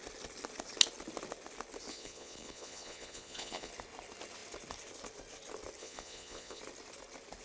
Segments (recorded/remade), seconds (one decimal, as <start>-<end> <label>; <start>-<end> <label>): 0.0-1.9 recorded; 1.9-3.7 remade; 3.7-5.8 recorded; 5.8-6.6 remade; 6.6-7.4 recorded